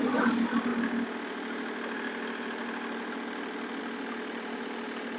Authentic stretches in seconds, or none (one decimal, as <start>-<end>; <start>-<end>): 0.0-5.2